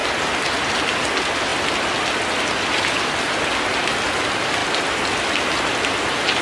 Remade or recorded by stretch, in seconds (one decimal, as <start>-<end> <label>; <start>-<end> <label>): 0.0-4.6 recorded; 4.6-5.2 remade; 5.2-6.4 recorded